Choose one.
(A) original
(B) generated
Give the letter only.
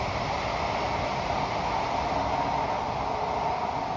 A